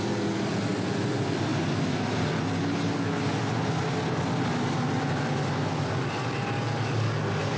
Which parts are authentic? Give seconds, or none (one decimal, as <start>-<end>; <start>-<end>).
0.0-7.6